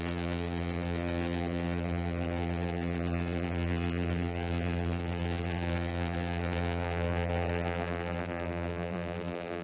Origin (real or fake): fake